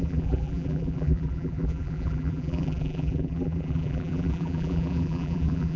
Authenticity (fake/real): fake